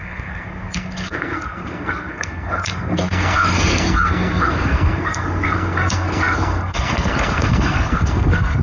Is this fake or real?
fake